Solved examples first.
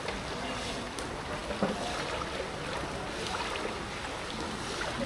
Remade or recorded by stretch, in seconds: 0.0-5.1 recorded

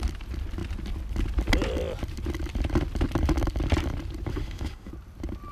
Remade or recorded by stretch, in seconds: 0.0-4.3 recorded; 4.3-4.9 remade; 4.9-5.5 recorded

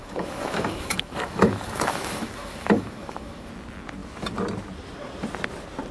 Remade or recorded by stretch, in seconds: 0.0-3.5 remade; 3.5-5.9 recorded

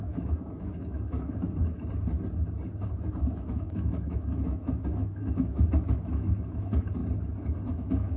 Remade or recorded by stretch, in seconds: 0.0-1.6 remade; 1.6-3.2 recorded; 3.2-7.0 remade; 7.0-7.7 recorded; 7.7-8.2 remade

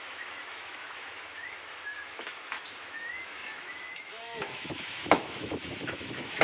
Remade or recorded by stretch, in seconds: 0.0-6.4 remade